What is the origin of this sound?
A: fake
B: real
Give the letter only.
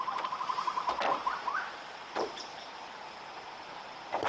A